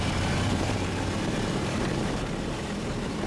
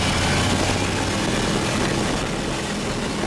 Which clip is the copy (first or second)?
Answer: first